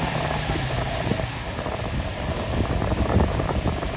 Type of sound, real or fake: fake